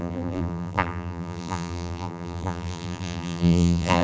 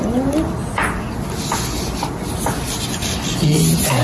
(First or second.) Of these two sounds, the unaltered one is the second